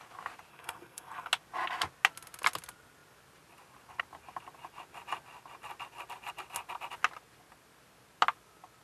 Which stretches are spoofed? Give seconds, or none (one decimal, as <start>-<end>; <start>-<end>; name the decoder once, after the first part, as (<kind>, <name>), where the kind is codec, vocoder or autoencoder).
0.5-1.3 (codec, SNAC)